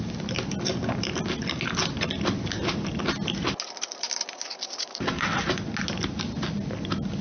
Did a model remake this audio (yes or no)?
no